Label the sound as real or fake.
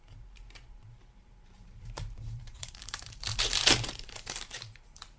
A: fake